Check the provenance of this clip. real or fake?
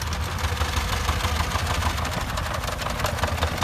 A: real